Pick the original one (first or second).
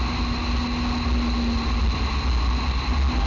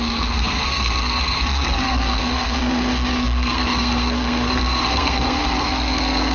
first